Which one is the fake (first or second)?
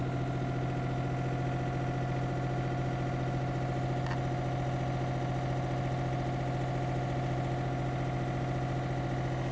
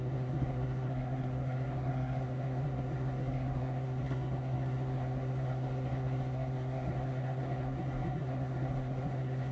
second